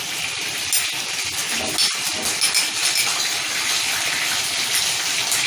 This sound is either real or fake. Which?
real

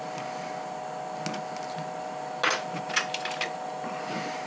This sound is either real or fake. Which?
real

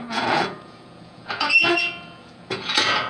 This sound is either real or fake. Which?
fake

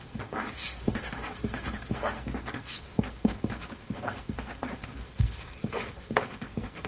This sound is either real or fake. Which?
fake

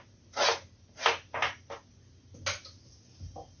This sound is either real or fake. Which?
real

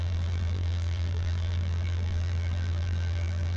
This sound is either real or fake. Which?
fake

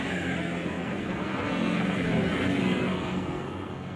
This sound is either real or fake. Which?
fake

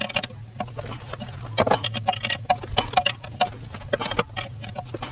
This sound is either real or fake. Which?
real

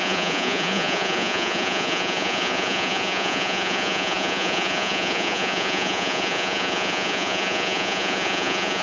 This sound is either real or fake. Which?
fake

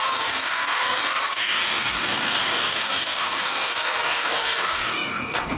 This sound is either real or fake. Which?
fake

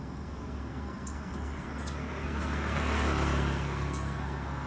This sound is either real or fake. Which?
fake